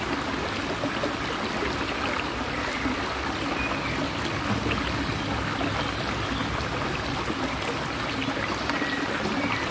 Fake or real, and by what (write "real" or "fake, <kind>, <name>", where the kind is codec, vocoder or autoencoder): real